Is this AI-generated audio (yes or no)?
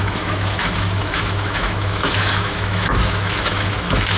yes